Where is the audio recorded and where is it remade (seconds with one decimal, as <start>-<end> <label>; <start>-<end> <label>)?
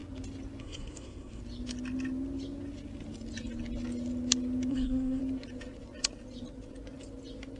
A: 0.0-0.6 recorded; 0.6-1.4 remade; 1.4-4.7 recorded; 4.7-5.2 remade; 5.2-7.6 recorded